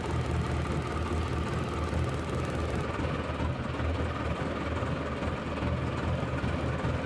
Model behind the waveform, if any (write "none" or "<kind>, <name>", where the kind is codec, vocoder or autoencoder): none